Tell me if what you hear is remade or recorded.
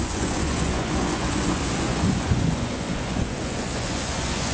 remade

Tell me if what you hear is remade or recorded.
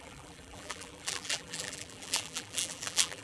remade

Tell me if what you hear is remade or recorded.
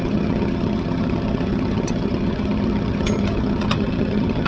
remade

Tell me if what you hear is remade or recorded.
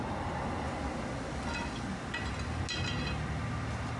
recorded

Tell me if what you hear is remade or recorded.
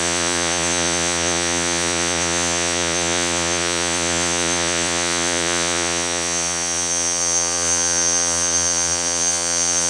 remade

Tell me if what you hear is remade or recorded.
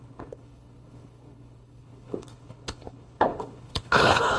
remade